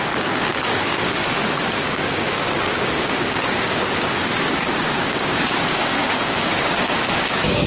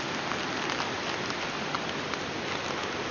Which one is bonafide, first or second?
second